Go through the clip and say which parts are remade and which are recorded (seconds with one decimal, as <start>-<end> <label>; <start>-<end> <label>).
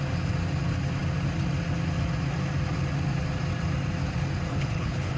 0.0-4.5 recorded; 4.5-5.2 remade